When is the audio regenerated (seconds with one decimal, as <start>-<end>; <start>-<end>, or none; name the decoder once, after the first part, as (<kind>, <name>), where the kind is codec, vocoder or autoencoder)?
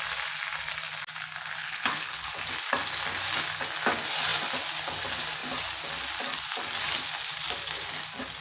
1.6-2.3 (codec, HILCodec)